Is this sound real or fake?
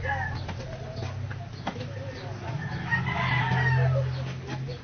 real